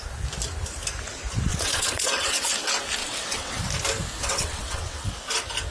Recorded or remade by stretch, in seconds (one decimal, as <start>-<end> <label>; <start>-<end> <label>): 0.0-1.5 recorded; 1.5-2.5 remade; 2.5-3.0 recorded; 3.0-3.6 remade; 3.6-4.2 recorded; 4.2-5.1 remade; 5.1-5.7 recorded